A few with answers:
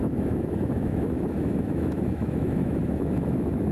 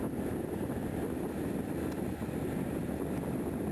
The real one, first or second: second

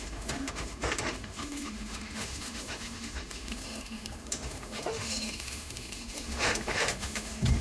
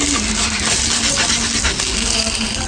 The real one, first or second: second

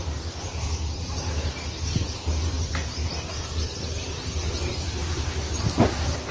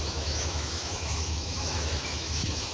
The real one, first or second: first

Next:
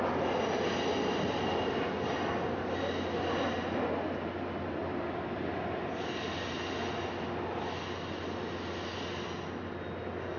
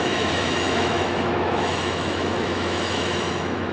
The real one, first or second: first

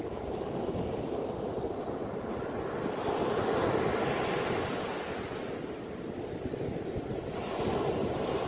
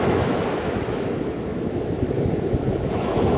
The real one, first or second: first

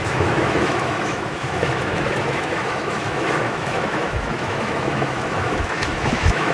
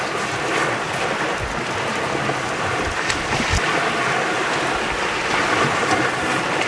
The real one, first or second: second